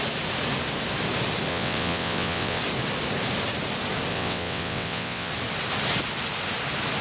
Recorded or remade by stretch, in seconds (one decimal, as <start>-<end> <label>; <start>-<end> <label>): 0.0-1.5 recorded; 1.5-2.6 remade; 2.6-4.1 recorded; 4.1-5.3 remade; 5.3-7.0 recorded